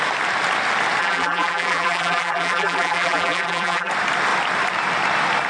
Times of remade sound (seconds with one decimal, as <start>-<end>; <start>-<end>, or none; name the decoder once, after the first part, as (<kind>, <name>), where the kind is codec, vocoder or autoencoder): 1.0-3.9 (vocoder, BigVGAN v2)